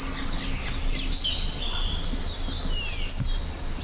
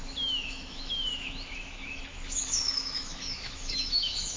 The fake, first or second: second